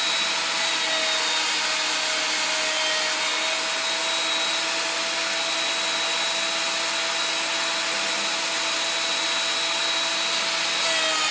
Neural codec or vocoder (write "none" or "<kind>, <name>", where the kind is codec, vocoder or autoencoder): none